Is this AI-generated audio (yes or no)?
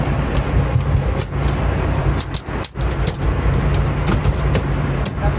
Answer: no